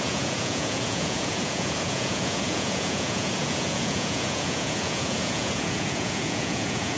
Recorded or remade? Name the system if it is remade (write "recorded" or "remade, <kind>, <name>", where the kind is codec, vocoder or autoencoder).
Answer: remade, vocoder, Vocos